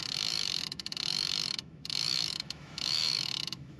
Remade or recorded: remade